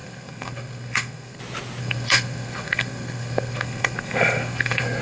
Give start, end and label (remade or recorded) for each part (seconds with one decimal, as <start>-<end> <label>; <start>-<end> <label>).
0.0-1.4 remade; 1.4-1.8 recorded; 1.8-5.0 remade

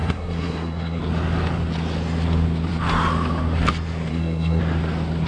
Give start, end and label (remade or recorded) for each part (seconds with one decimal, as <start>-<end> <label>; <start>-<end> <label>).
0.0-1.0 remade; 1.0-4.1 recorded; 4.1-4.6 remade; 4.6-5.3 recorded

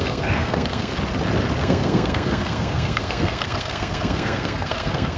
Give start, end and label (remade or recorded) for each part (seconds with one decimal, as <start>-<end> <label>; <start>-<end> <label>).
0.0-0.9 remade; 0.9-1.6 recorded; 1.6-5.2 remade

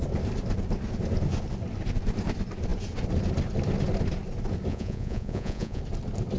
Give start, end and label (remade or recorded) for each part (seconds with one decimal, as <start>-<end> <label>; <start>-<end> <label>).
0.0-4.7 recorded; 4.7-5.8 remade; 5.8-6.4 recorded

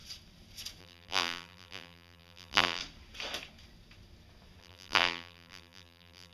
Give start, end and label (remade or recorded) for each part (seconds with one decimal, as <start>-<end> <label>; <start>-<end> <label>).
0.0-0.8 recorded; 0.8-2.8 remade; 2.8-4.6 recorded; 4.6-6.3 remade

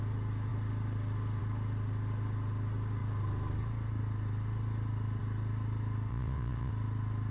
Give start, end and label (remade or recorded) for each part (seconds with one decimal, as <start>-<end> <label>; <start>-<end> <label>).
0.0-6.1 recorded; 6.1-6.7 remade; 6.7-7.3 recorded

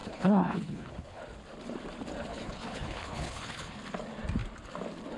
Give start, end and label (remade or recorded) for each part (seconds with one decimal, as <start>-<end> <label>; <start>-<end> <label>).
0.0-1.2 remade; 1.2-2.3 recorded; 2.3-3.8 remade; 3.8-5.2 recorded